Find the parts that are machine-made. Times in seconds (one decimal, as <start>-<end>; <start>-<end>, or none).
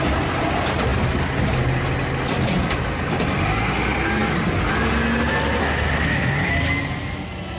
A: 5.6-6.5